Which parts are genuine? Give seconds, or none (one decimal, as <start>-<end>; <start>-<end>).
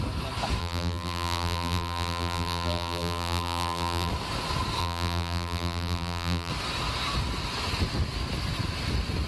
0.0-0.6; 4.1-4.8; 6.5-9.3